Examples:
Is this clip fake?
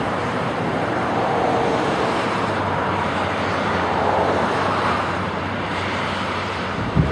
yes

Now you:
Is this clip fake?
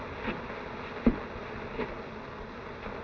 no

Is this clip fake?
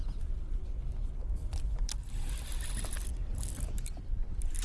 no